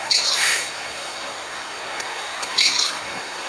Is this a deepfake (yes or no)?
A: yes